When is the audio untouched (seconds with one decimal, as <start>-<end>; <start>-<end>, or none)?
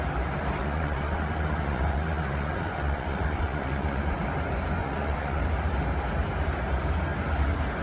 0.0-0.6; 4.2-4.8; 5.4-7.8